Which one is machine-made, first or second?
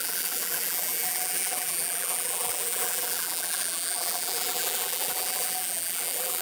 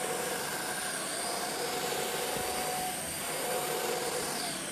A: first